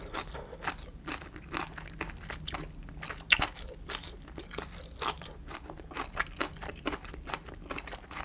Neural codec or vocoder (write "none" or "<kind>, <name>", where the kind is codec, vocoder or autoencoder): none